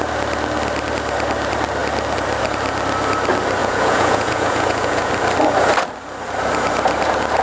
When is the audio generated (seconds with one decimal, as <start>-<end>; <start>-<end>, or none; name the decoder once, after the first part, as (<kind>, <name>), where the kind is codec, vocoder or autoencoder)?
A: 3.6-5.1 (vocoder, Vocos)